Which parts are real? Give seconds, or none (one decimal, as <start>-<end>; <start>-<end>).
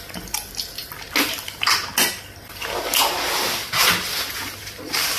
0.0-5.2